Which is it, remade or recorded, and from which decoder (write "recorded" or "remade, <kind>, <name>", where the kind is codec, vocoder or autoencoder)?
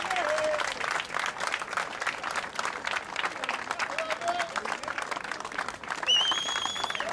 recorded